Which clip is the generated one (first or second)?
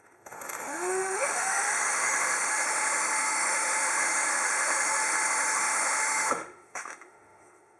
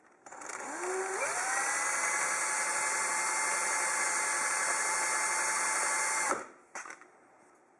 first